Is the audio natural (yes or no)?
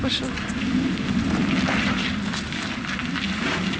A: yes